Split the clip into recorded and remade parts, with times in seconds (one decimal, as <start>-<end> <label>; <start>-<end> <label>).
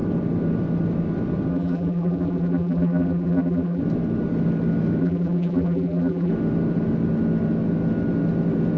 0.0-1.5 recorded; 1.5-3.8 remade; 3.8-5.0 recorded; 5.0-6.3 remade; 6.3-8.8 recorded